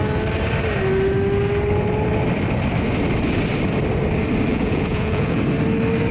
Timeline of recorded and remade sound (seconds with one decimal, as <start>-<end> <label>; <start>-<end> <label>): 0.0-4.5 recorded; 4.5-5.4 remade; 5.4-6.1 recorded